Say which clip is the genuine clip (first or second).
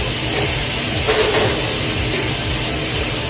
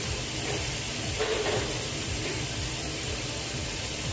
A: first